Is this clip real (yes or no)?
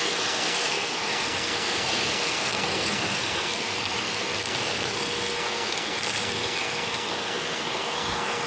no